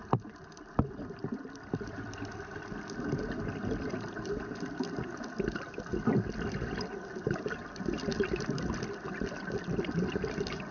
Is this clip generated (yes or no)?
no